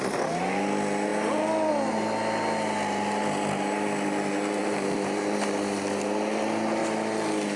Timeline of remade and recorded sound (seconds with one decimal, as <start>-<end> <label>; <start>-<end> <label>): 0.0-4.6 recorded; 4.6-5.2 remade; 5.2-7.6 recorded

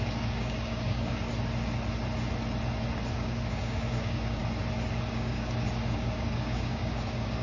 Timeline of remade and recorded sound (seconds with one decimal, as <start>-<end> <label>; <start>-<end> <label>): 0.0-1.3 remade; 1.3-3.1 recorded; 3.1-4.4 remade; 4.4-5.1 recorded; 5.1-7.4 remade

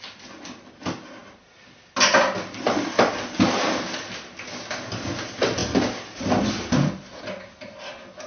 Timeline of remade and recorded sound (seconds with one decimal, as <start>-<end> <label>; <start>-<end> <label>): 0.0-8.3 recorded

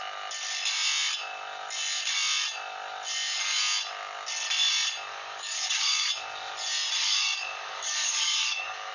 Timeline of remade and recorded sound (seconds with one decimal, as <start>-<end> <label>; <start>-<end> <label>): 0.0-5.1 recorded; 5.1-6.1 remade; 6.1-7.0 recorded; 7.0-8.9 remade